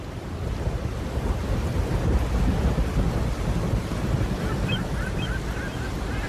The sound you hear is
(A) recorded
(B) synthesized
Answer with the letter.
A